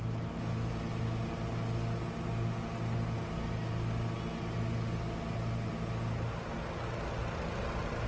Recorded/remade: recorded